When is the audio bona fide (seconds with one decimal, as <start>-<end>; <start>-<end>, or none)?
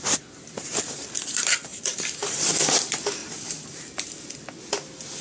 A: none